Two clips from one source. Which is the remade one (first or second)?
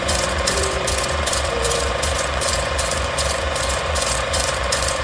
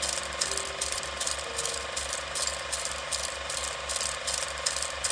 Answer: first